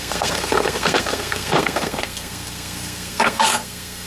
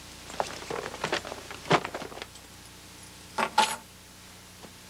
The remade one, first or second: first